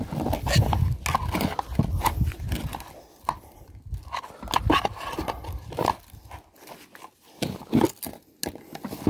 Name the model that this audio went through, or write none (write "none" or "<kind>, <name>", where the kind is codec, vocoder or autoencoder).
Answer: none